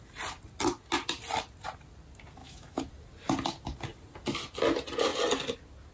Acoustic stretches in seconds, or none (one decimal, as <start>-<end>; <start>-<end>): 0.0-2.4; 2.9-5.9